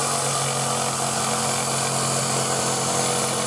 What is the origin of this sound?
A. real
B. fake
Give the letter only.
A